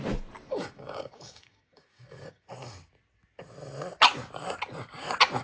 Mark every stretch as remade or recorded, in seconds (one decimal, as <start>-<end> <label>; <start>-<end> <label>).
0.0-0.5 recorded; 0.5-2.5 remade; 2.5-5.4 recorded